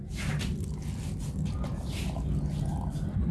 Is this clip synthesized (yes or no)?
no